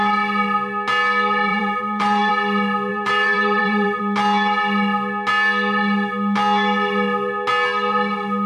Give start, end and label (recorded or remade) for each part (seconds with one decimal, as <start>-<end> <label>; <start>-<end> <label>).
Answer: 0.0-1.5 recorded; 1.5-2.3 remade; 2.3-2.9 recorded; 2.9-4.0 remade; 4.0-8.5 recorded